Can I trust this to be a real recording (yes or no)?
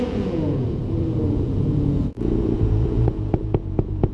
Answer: no